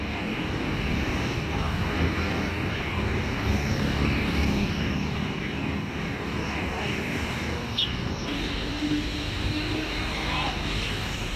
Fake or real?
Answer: fake